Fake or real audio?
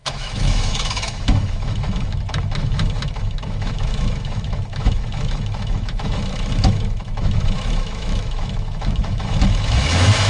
fake